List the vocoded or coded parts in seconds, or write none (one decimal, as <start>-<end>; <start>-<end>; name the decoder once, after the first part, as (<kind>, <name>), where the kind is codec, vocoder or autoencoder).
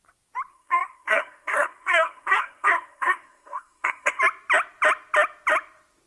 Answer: 0.5-4.2 (codec, SNAC)